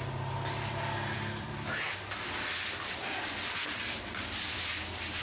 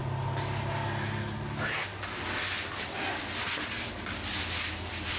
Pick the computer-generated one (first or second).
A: first